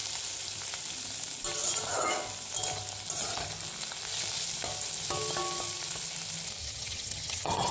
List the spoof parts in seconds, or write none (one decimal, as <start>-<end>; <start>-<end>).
6.6-7.7